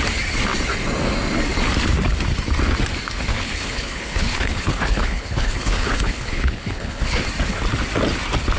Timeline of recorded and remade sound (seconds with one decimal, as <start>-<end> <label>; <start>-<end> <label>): 0.0-3.3 recorded; 3.3-7.2 remade; 7.2-8.6 recorded